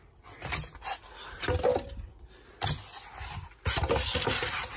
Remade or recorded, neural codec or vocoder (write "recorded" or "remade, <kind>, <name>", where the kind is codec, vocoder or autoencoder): recorded